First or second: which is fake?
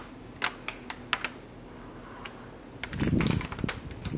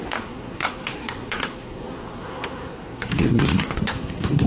second